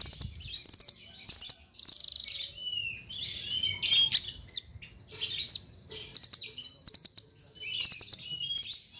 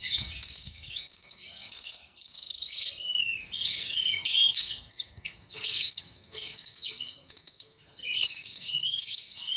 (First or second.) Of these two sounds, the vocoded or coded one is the second